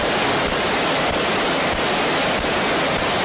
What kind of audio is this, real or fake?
real